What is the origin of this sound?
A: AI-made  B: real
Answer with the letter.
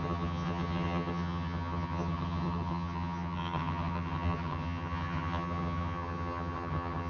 A